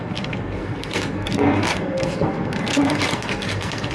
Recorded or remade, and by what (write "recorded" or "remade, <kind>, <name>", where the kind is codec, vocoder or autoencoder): remade, codec, SNAC